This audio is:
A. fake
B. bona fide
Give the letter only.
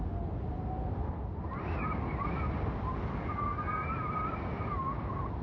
B